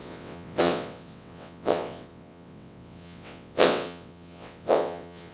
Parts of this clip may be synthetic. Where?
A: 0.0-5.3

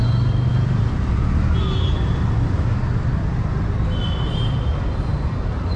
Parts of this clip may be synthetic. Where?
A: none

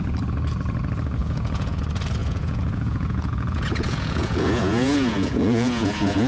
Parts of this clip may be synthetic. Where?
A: 1.2-1.8; 2.2-6.3